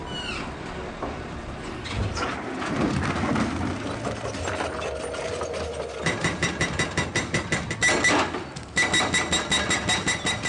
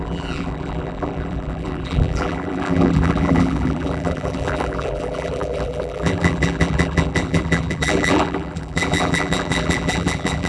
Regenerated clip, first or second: second